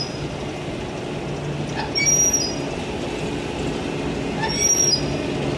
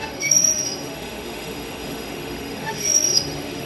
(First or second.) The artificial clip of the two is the second